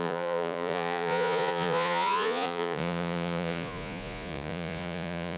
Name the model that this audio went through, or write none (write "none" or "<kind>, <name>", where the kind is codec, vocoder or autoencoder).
vocoder, Vocos